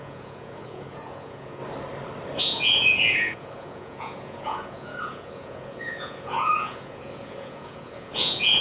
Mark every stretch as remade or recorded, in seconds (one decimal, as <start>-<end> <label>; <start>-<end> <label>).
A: 0.0-1.6 remade; 1.6-2.4 recorded; 2.4-8.6 remade